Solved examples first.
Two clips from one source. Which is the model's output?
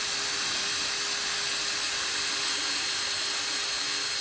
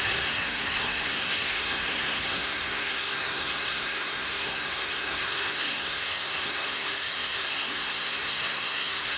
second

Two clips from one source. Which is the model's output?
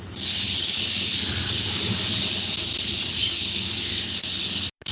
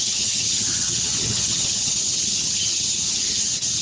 second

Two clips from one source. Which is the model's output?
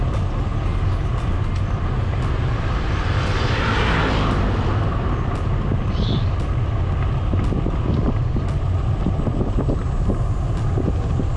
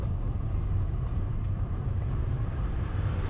second